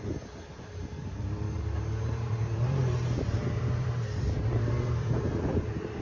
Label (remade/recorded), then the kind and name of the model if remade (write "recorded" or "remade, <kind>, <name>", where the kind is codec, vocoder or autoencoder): remade, vocoder, BigVGAN v2